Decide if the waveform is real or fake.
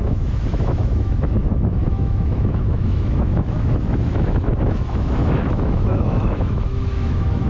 fake